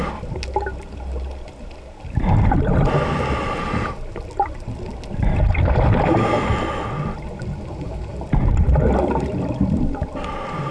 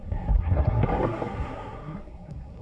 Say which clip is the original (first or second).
first